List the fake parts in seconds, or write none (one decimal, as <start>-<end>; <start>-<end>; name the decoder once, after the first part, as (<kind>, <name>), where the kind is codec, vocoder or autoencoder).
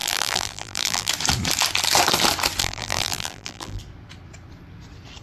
0.0-1.1 (vocoder, BigVGAN v2); 2.6-3.8